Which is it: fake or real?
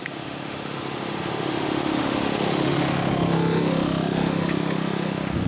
fake